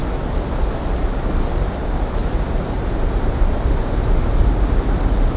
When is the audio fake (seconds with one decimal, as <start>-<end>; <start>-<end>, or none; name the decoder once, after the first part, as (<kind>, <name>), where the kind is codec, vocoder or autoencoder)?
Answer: 2.2-3.3 (vocoder, BigVGAN v2)